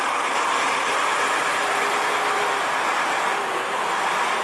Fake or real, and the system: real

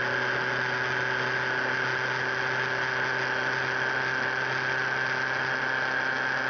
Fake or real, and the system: real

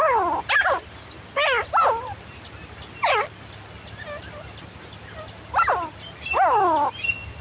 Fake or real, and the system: real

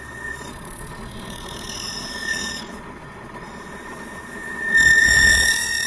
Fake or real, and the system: fake, vocoder, Vocos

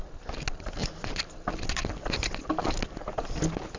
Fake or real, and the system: real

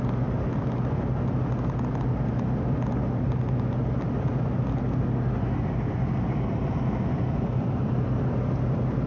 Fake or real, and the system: real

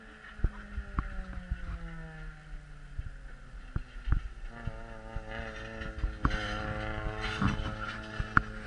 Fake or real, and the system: real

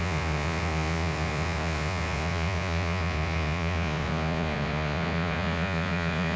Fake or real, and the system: fake, vocoder, Vocos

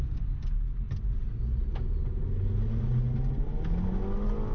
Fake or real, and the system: real